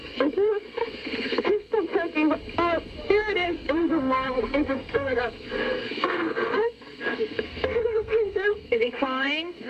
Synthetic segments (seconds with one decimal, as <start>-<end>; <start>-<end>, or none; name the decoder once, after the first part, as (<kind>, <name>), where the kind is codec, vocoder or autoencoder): 0.0-1.7 (codec, SNAC); 3.0-9.7